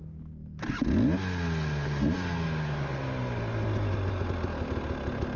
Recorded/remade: recorded